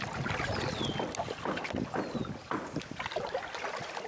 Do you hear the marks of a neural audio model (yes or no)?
no